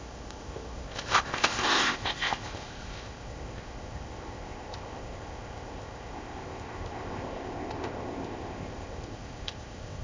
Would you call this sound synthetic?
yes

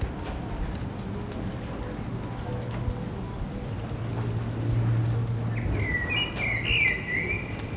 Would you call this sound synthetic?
no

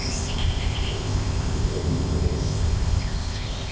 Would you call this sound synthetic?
yes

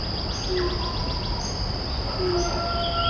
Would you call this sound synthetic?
no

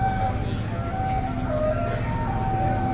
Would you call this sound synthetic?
no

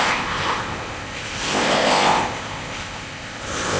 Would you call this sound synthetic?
yes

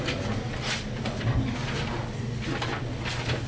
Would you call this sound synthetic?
no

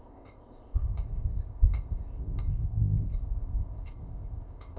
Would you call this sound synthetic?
yes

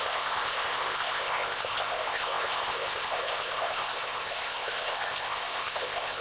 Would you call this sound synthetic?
yes